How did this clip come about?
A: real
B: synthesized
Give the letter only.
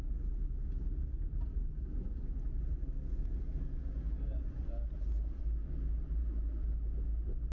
A